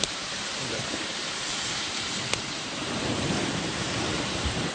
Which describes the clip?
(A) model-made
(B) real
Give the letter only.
A